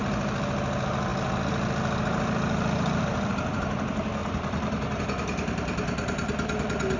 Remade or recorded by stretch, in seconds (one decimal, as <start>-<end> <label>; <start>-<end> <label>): 0.0-7.0 recorded